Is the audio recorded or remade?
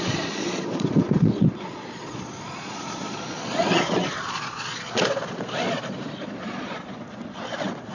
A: remade